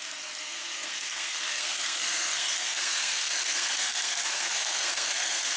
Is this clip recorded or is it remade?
remade